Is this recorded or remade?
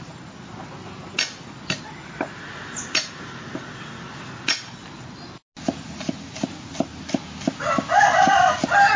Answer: recorded